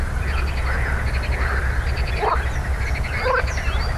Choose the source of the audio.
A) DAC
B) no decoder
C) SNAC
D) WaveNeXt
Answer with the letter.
B